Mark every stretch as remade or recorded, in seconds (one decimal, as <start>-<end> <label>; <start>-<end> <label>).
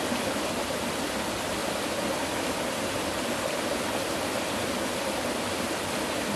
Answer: 0.0-6.4 recorded